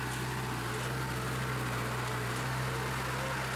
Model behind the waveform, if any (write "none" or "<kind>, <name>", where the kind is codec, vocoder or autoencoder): none